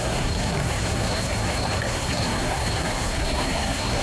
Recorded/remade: remade